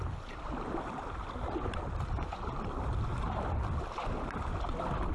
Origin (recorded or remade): recorded